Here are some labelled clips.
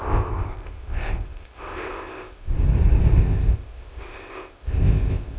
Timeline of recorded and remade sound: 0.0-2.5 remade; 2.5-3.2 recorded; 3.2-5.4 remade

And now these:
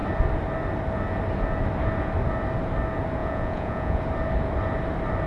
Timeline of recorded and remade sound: 0.0-3.2 recorded; 3.2-4.0 remade; 4.0-5.3 recorded